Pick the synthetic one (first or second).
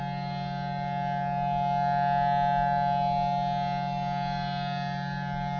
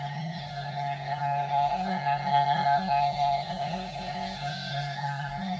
second